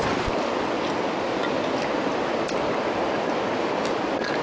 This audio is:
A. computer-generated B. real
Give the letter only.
B